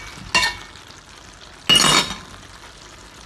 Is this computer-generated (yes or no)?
no